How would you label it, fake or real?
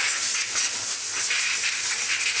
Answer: real